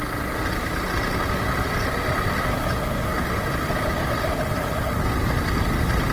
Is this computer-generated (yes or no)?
no